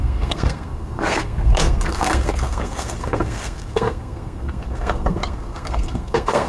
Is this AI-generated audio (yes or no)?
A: yes